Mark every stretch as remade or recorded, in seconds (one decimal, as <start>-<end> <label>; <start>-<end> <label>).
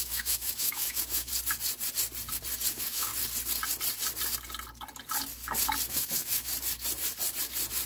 0.0-1.3 remade; 1.3-2.7 recorded; 2.7-3.1 remade; 3.1-5.9 recorded; 5.9-6.5 remade; 6.5-7.9 recorded